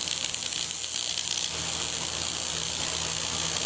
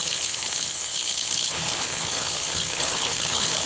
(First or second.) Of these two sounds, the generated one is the second